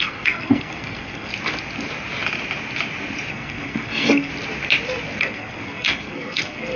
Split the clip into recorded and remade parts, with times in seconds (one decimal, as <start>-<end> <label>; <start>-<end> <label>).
0.0-1.3 remade; 1.3-3.3 recorded; 3.3-4.3 remade; 4.3-5.2 recorded; 5.2-6.8 remade